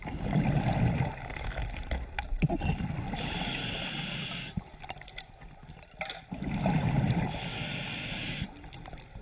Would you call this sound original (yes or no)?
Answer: yes